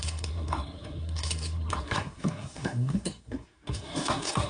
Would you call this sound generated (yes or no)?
yes